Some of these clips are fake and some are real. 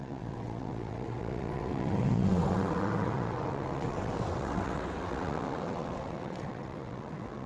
fake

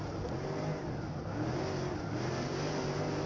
real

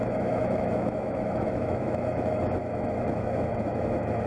fake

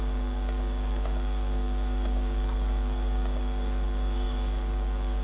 fake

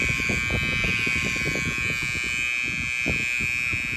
real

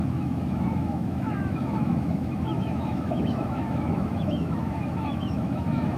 fake